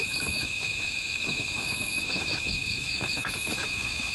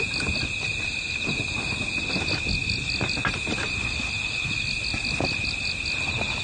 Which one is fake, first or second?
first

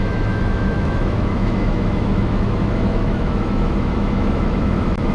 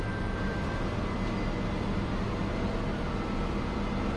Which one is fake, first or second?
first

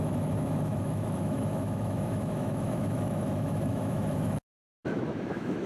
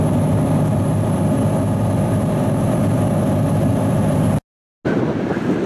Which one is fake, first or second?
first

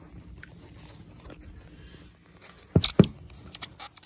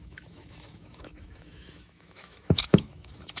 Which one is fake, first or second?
second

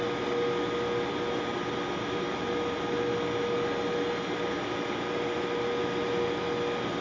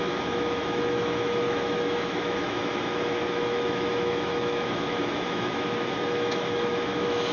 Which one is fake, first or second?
second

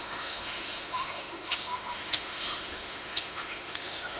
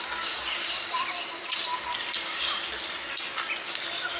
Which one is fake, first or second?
first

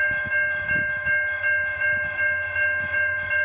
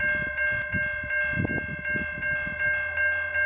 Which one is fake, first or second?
first